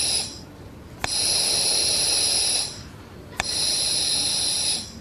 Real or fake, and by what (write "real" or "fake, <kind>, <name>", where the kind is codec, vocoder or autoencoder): real